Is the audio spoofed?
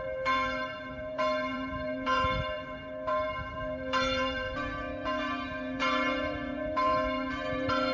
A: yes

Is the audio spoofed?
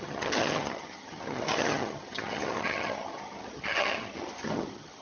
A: yes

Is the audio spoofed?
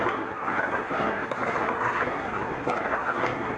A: yes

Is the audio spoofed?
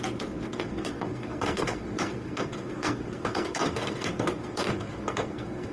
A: yes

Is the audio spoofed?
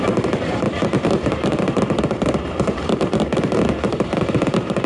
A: yes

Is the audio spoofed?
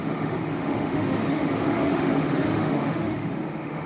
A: yes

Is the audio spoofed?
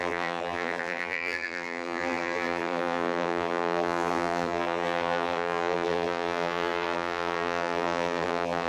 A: yes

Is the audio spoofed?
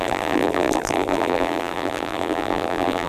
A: yes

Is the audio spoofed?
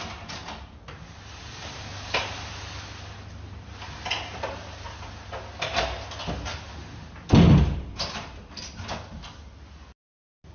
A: no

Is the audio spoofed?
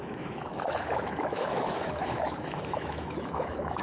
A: yes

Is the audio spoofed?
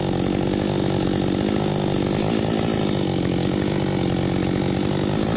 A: no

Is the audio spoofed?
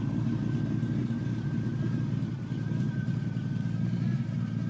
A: no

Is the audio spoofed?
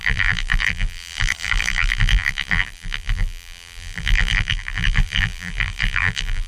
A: yes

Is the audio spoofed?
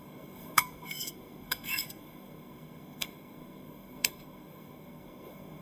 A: yes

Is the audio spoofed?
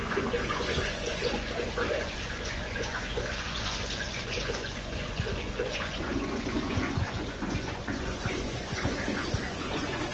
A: yes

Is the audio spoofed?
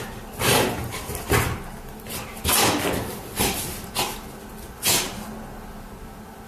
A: no